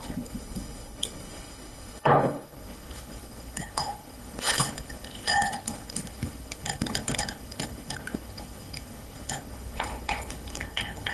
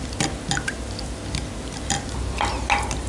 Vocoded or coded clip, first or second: first